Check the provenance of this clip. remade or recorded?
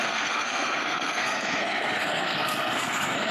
remade